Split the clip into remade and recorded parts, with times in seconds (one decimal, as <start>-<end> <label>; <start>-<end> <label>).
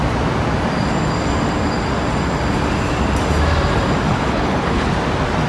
0.0-4.1 recorded; 4.1-4.9 remade; 4.9-5.5 recorded